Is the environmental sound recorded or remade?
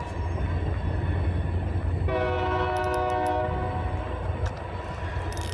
recorded